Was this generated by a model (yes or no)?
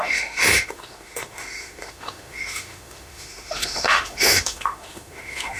yes